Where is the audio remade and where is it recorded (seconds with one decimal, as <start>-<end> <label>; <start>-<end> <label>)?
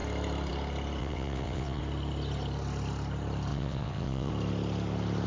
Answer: 0.0-1.0 recorded; 1.0-1.8 remade; 1.8-3.5 recorded; 3.5-4.3 remade; 4.3-5.3 recorded